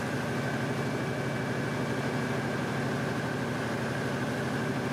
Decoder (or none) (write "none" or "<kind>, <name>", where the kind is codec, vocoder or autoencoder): none